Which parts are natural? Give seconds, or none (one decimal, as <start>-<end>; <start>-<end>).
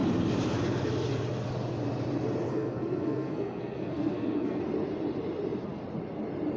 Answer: 0.0-2.5; 4.6-6.6